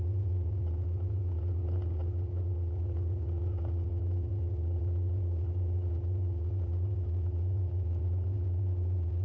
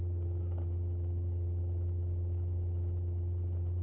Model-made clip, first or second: first